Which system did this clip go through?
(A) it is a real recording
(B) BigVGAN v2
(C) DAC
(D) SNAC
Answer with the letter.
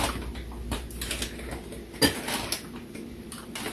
A